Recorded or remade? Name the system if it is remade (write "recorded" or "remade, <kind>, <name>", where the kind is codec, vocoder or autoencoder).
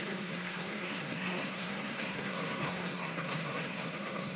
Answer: remade, codec, SNAC